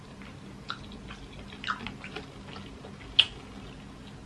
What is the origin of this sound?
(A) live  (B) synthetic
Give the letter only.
A